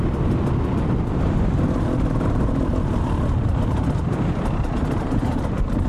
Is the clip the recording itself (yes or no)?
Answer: yes